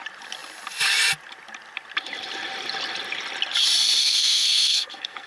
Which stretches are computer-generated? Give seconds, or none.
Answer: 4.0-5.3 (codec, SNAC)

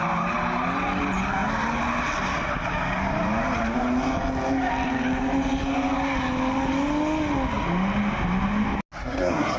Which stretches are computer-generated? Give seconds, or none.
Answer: 9.0-9.6 (codec, SNAC)

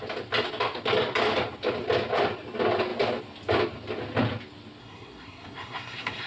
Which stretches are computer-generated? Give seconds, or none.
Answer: 4.8-6.3 (codec, SNAC)

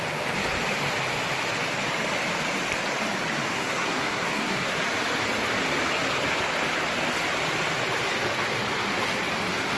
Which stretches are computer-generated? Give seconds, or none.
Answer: 3.5-4.8 (codec, SNAC)

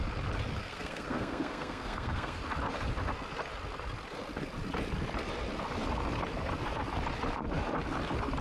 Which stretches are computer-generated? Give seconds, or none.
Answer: 0.6-2.4 (codec, SNAC)